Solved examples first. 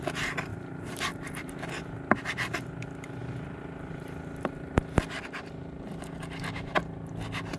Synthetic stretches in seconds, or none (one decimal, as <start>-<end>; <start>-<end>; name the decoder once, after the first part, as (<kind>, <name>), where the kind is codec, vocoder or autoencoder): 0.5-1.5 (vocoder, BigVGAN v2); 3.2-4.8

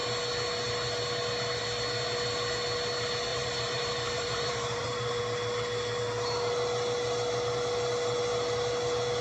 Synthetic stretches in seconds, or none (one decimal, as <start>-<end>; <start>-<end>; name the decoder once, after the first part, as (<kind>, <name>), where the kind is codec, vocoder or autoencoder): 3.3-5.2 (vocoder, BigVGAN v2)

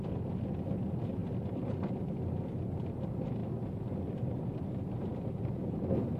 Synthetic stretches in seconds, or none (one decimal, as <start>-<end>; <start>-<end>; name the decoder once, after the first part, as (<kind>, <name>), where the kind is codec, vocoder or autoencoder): 1.2-2.2 (vocoder, BigVGAN v2)

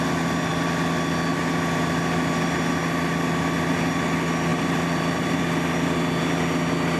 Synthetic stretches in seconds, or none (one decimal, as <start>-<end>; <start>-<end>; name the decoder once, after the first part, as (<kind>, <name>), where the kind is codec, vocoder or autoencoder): 4.5-5.4 (vocoder, BigVGAN v2)

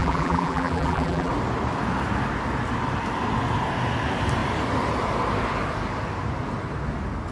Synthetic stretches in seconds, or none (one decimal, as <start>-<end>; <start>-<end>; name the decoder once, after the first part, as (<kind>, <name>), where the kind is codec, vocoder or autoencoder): 0.0-1.3 (vocoder, BigVGAN v2)

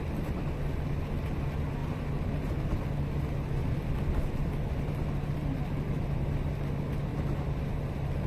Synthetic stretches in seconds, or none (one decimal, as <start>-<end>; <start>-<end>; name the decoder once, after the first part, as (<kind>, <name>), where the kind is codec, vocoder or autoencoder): 1.8-2.9 (vocoder, BigVGAN v2); 3.6-5.9; 7.1-7.7

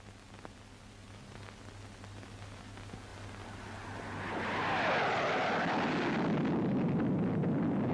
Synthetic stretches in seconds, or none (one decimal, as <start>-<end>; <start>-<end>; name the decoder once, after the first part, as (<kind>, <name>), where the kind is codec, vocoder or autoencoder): none

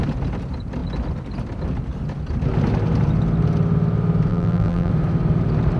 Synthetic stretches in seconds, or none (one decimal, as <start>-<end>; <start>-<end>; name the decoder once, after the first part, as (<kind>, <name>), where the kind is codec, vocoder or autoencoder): 4.3-4.9 (vocoder, BigVGAN v2)